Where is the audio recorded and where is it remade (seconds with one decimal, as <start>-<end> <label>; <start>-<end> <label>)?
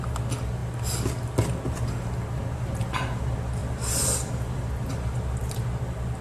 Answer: 0.0-6.2 recorded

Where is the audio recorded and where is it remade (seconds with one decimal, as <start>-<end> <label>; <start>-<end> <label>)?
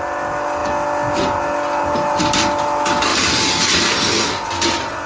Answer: 0.0-5.1 recorded